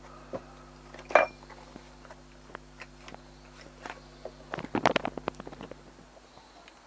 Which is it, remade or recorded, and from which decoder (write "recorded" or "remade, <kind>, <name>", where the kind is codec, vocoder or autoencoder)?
recorded